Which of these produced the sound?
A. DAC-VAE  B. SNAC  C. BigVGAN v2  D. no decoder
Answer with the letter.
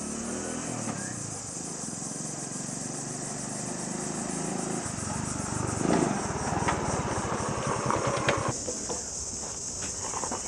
D